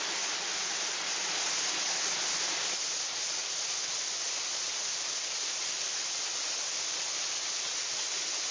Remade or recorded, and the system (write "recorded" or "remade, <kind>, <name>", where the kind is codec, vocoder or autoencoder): recorded